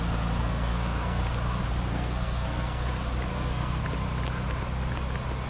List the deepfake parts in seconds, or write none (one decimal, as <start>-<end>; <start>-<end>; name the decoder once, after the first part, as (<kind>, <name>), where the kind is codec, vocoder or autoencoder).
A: 0.4-1.2 (codec, SNAC); 1.9-2.9; 3.3-3.8